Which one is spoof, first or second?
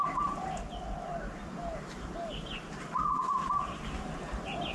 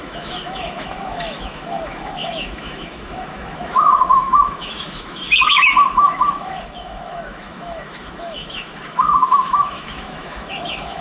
second